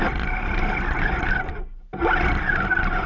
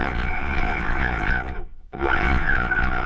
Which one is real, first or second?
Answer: first